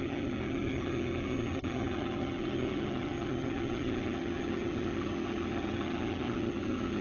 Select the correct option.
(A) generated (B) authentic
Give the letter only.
A